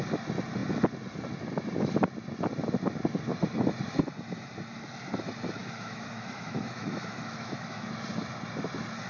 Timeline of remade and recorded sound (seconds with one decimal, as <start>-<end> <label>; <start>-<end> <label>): 0.0-5.6 recorded; 5.6-7.9 remade; 7.9-9.1 recorded